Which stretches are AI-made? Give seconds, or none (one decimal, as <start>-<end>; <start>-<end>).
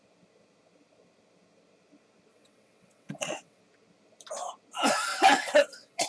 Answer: 2.3-3.6; 5.1-6.1